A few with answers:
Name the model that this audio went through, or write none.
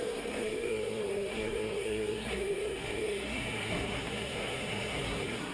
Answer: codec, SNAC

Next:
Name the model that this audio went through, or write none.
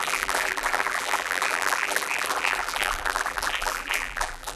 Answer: vocoder, BigVGAN v2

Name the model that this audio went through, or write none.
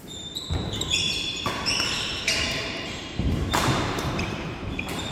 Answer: vocoder, BigVGAN v2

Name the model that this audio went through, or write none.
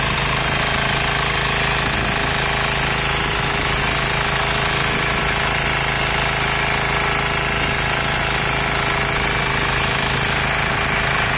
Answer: none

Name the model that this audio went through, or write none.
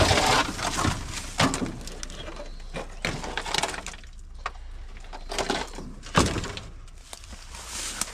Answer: none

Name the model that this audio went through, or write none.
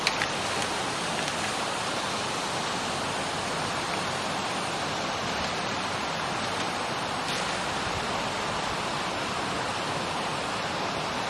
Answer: none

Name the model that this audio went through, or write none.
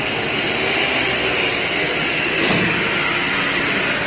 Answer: none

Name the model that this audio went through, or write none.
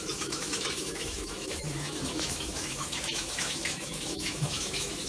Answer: autoencoder, DAC-VAE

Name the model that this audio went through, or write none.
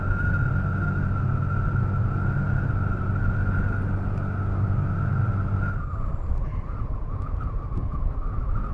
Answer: none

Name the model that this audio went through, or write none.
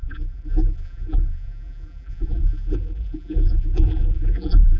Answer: vocoder, BigVGAN v2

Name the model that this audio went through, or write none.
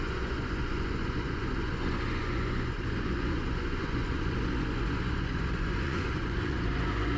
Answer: vocoder, Vocos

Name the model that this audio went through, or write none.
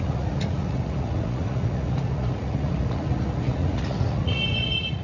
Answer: vocoder, Vocos